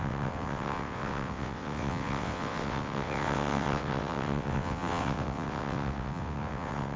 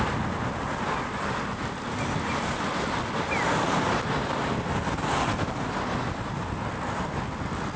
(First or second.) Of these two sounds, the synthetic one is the first